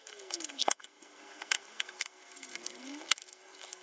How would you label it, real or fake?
fake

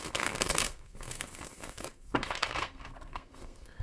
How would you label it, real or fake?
fake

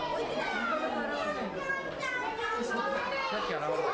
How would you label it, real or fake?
real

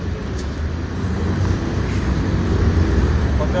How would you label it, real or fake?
real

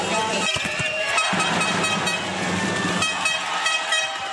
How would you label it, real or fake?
real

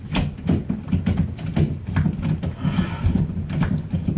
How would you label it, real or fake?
real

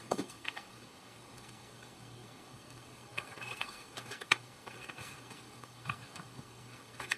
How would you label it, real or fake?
fake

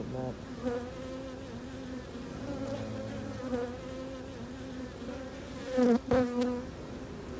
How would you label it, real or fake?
real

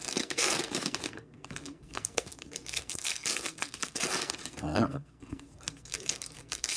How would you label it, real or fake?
fake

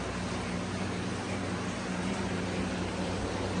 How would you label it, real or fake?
real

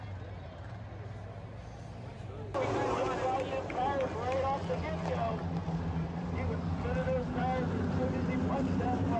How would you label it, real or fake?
real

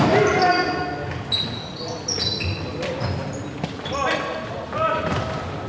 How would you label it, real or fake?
real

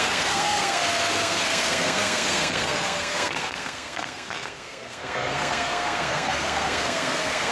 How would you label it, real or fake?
fake